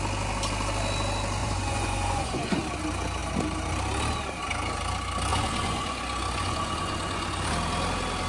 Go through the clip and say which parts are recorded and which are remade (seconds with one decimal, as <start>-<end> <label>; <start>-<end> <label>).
0.0-1.4 recorded; 1.4-2.6 remade; 2.6-5.3 recorded; 5.3-7.5 remade; 7.5-8.3 recorded